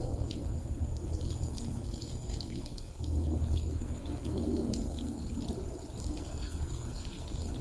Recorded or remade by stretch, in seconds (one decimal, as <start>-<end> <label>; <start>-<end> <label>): 0.0-5.2 remade; 5.2-6.0 recorded; 6.0-7.6 remade